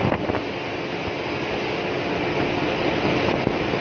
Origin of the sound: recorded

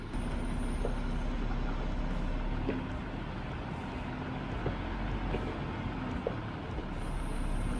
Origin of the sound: recorded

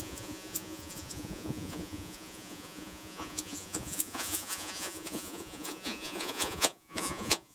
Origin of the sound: remade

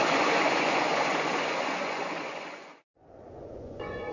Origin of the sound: remade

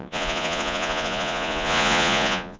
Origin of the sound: remade